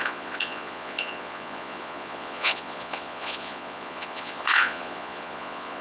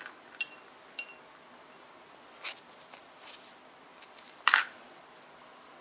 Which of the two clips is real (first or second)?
second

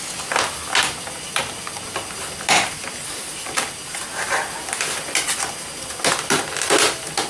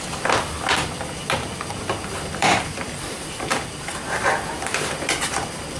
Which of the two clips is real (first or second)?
first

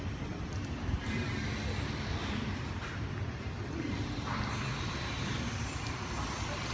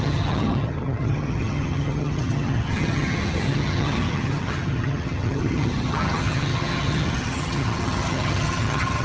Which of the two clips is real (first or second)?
first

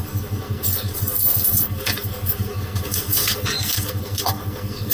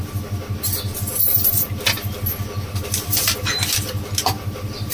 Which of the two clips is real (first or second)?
second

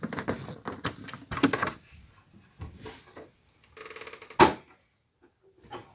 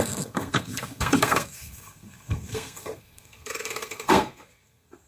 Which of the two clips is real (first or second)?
first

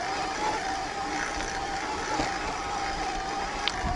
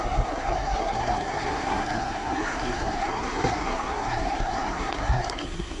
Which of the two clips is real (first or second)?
first